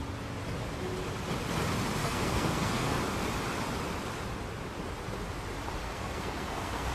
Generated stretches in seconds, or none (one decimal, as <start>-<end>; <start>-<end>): 2.0-3.0; 5.8-6.9